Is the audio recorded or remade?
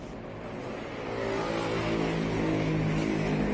recorded